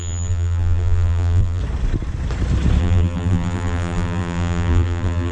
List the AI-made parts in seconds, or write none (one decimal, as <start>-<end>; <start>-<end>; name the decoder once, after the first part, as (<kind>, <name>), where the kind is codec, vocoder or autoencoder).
0.0-1.6 (vocoder, BigVGAN v2); 2.8-5.3